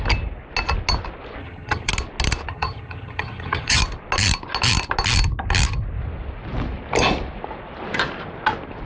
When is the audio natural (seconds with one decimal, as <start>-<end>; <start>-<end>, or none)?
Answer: 0.0-1.4; 1.9-2.5; 3.8-8.9